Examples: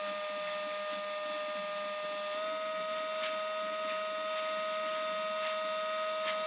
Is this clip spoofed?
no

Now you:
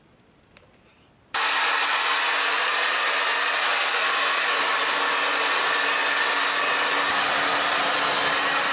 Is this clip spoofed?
no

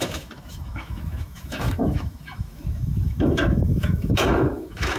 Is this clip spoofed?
yes